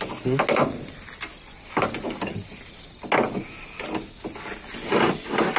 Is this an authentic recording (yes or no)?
yes